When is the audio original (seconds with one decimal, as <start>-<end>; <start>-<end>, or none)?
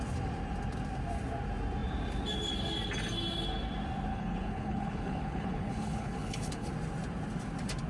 0.0-4.1; 6.7-7.9